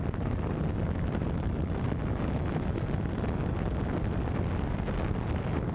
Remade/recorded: recorded